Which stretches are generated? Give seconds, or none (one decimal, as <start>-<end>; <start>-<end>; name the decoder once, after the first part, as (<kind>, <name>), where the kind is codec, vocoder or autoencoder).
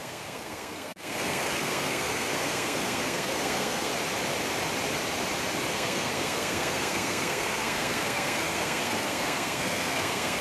0.0-3.9 (codec, SNAC); 5.7-10.4